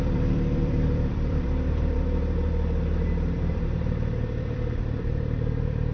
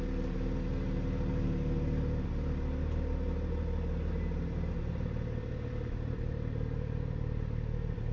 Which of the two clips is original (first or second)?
second